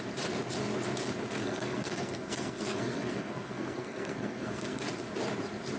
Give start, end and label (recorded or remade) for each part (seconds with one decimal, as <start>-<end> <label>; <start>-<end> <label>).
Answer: 0.0-1.4 recorded; 1.4-4.8 remade; 4.8-5.8 recorded